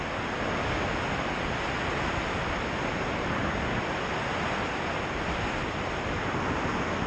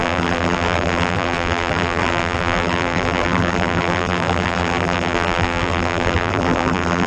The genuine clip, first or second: first